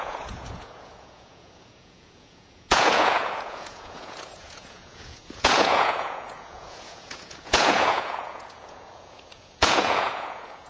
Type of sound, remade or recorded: remade